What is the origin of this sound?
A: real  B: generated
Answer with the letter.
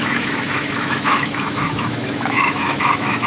B